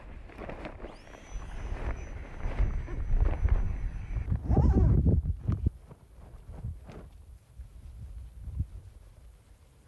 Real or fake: real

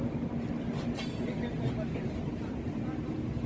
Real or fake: real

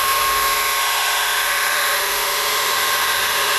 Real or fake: fake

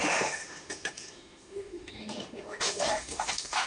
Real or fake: fake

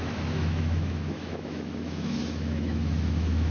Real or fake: fake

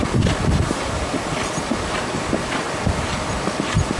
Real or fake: real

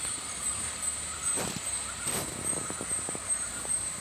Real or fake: real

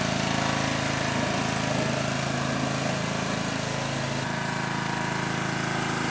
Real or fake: real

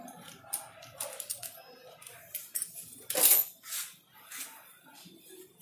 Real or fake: real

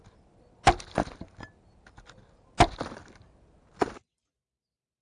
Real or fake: real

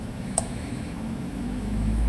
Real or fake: fake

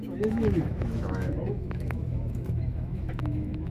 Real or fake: fake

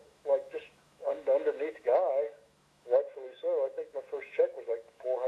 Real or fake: fake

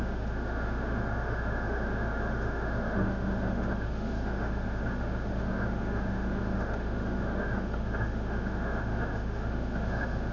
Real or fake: fake